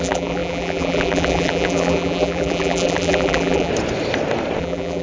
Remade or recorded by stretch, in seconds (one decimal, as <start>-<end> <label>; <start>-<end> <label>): 0.0-3.7 remade; 3.7-4.6 recorded; 4.6-5.0 remade